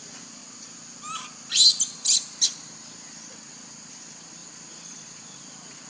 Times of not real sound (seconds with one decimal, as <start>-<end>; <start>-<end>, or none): none